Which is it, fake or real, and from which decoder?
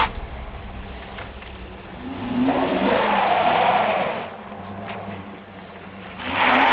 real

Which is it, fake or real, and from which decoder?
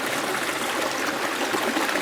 real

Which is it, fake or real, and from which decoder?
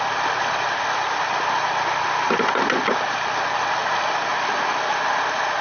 real